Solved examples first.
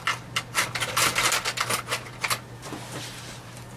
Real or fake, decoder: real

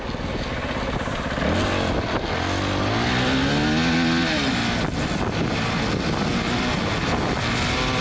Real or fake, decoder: real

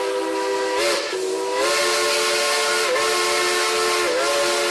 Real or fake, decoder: real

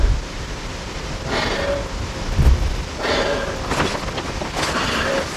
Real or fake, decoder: real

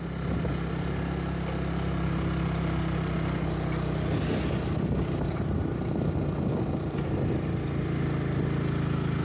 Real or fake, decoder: real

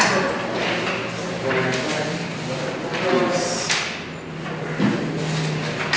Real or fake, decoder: real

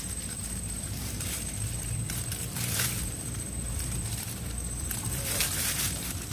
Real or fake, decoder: fake, vocoder, BigVGAN v2